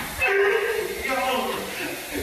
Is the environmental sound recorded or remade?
recorded